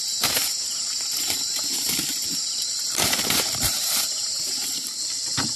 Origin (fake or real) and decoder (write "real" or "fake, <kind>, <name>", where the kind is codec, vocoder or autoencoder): fake, vocoder, BigVGAN v2